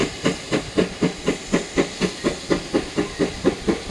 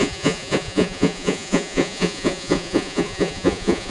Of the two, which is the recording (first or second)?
first